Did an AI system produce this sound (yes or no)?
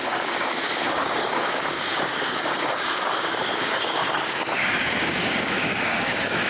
yes